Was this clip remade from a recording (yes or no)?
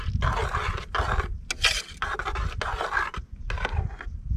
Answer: no